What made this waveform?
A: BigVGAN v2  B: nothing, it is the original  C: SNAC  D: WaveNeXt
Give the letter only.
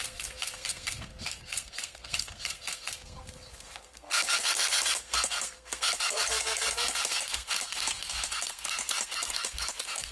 C